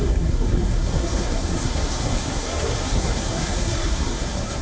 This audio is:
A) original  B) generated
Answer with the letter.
B